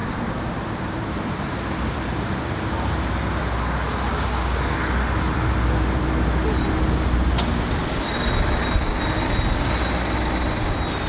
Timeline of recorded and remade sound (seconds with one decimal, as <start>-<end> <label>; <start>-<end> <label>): 0.0-3.4 remade; 3.4-11.1 recorded